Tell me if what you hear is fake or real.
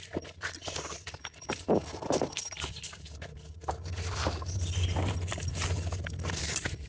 fake